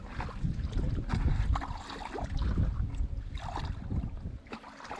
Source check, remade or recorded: recorded